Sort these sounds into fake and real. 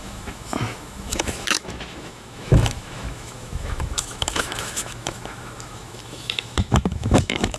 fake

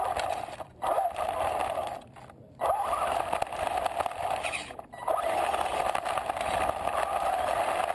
real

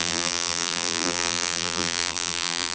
fake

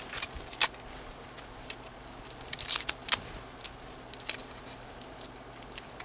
real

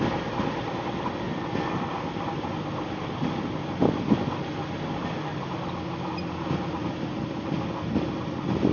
real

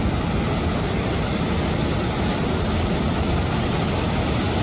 real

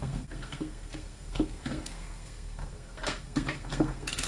fake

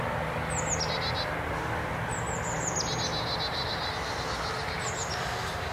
real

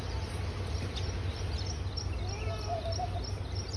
real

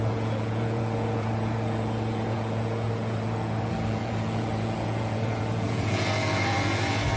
fake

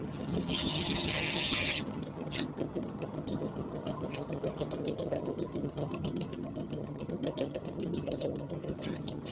fake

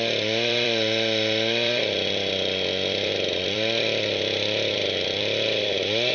fake